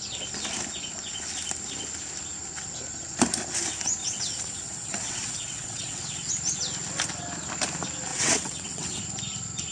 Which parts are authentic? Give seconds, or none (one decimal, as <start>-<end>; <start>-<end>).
0.0-4.0; 6.3-8.1; 9.0-9.7

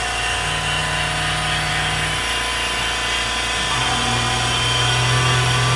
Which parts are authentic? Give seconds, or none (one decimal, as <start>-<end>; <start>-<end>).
0.0-5.8

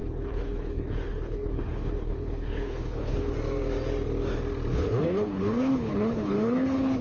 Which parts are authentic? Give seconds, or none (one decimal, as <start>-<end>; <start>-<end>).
3.3-4.7

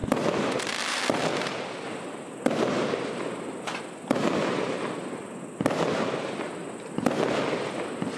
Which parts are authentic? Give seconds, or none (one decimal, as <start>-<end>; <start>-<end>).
0.0-8.2